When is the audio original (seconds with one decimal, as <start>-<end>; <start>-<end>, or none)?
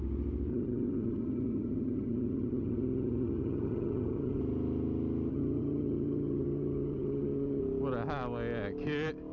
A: 0.0-0.5; 4.4-5.3; 7.6-9.3